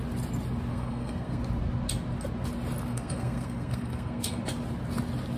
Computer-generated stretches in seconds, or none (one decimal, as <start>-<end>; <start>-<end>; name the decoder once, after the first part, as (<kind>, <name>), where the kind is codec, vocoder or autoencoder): 0.7-1.4 (codec, SNAC); 2.9-4.4